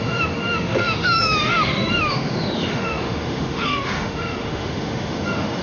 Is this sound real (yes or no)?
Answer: no